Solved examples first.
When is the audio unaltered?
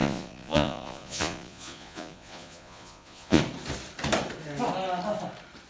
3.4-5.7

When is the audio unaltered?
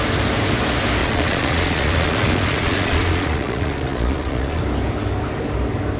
0.0-1.0; 4.6-6.0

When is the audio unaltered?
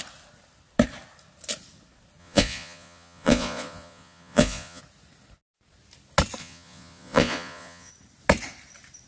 0.0-2.2; 4.8-6.4; 7.9-9.1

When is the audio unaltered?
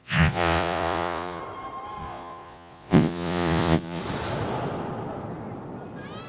1.4-2.0; 4.0-6.3